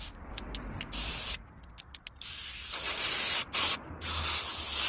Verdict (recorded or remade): recorded